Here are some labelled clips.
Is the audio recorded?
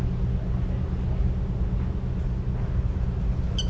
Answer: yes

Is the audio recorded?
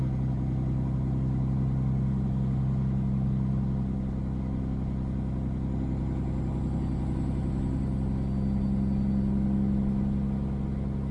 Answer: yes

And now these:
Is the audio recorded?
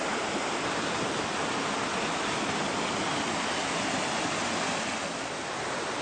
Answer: yes